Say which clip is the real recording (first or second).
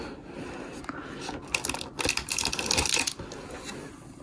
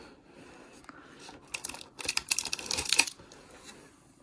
first